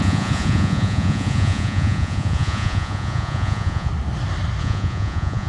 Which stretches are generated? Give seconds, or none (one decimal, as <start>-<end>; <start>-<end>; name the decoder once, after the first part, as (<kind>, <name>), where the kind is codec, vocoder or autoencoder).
0.0-3.9 (vocoder, Vocos); 4.6-5.5